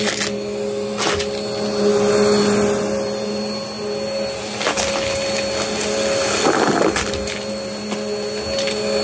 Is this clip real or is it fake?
real